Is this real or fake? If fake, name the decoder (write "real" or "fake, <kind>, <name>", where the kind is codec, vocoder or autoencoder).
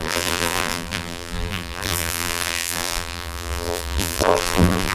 fake, vocoder, BigVGAN v2